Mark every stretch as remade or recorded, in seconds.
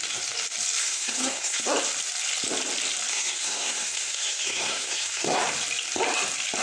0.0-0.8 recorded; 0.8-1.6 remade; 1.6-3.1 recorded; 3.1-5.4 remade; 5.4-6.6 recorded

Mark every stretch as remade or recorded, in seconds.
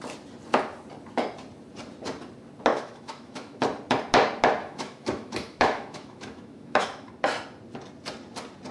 0.0-2.7 recorded; 2.7-3.6 remade; 3.6-4.6 recorded; 4.6-7.1 remade; 7.1-8.7 recorded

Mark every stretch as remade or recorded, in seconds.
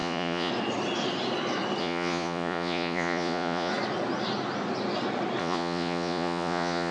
0.0-0.5 remade; 0.5-1.8 recorded; 1.8-3.7 remade; 3.7-5.4 recorded; 5.4-6.9 remade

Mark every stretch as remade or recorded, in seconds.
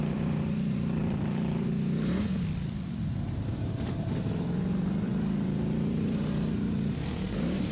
0.0-7.7 remade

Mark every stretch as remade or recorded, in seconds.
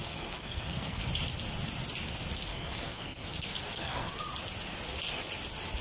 0.0-1.1 remade; 1.1-2.5 recorded; 2.5-4.1 remade; 4.1-5.8 recorded